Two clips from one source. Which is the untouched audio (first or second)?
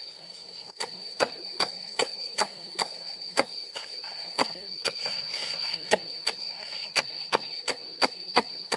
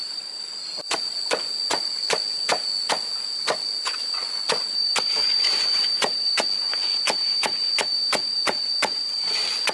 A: second